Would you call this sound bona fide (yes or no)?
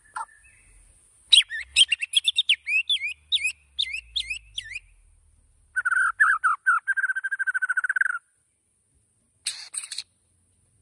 yes